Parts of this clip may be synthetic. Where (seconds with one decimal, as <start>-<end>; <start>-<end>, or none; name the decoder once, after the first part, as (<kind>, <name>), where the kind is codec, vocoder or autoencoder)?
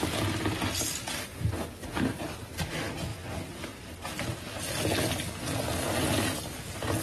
none